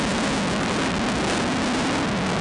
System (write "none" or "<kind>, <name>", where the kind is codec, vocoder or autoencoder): none